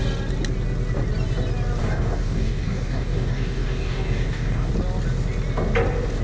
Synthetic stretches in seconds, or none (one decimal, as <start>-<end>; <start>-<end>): 1.8-4.7